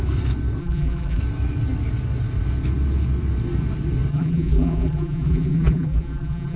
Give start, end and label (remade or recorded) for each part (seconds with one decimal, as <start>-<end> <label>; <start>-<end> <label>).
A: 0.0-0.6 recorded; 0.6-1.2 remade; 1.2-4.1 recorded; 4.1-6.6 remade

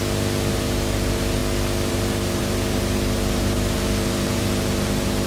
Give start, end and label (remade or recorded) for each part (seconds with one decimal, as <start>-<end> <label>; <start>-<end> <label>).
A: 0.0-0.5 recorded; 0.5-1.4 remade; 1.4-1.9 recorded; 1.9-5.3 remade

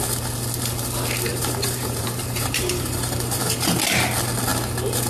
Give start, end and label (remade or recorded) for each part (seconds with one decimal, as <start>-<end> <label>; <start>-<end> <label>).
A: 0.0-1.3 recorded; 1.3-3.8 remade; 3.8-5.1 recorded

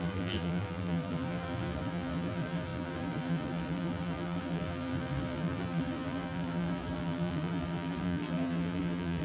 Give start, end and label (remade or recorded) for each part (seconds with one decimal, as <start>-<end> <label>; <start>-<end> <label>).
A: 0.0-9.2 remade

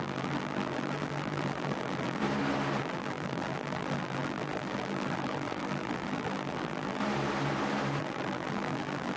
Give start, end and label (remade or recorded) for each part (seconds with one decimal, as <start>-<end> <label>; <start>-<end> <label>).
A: 0.0-2.2 remade; 2.2-2.8 recorded; 2.8-7.0 remade; 7.0-8.0 recorded; 8.0-9.2 remade

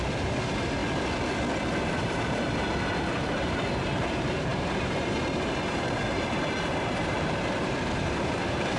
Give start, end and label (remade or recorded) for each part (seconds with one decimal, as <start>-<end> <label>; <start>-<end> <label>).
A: 0.0-0.8 remade; 0.8-1.8 recorded; 1.8-8.8 remade